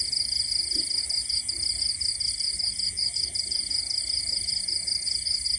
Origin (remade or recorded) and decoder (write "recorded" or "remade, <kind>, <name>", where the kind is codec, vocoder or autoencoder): recorded